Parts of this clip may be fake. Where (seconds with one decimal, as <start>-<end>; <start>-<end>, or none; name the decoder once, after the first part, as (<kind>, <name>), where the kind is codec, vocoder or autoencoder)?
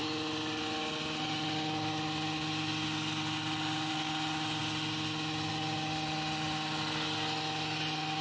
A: none